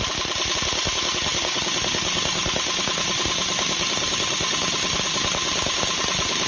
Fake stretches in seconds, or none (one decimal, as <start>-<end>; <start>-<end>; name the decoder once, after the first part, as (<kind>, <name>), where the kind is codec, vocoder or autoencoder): none